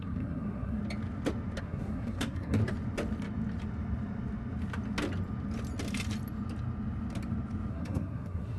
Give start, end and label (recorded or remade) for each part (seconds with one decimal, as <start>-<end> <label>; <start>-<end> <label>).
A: 0.0-0.8 remade; 0.8-1.6 recorded; 1.6-2.6 remade; 2.6-7.7 recorded; 7.7-8.6 remade